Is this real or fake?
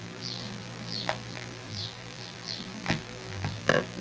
fake